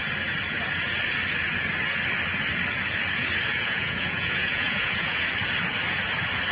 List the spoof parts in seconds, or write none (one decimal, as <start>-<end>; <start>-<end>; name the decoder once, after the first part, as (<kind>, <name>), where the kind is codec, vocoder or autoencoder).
3.5-5.2 (vocoder, Vocos)